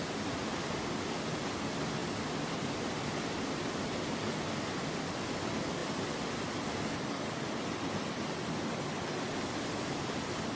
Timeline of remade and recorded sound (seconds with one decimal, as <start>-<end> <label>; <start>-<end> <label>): 0.0-10.6 recorded